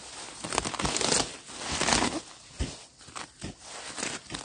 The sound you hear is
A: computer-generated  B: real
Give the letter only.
B